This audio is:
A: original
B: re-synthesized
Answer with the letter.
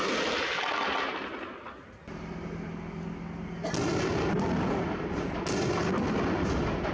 A